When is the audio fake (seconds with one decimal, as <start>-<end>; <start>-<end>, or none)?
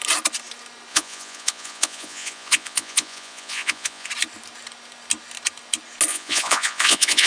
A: 0.9-4.1; 6.1-7.3